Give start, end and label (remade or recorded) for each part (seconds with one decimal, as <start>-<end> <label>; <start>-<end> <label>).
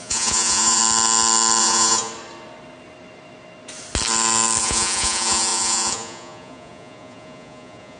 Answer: 0.0-0.8 remade; 0.8-1.6 recorded; 1.6-2.1 remade; 2.1-4.6 recorded; 4.6-8.0 remade